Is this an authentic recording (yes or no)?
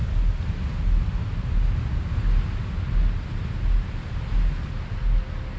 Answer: yes